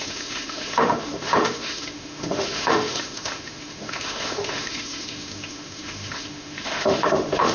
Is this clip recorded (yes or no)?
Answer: no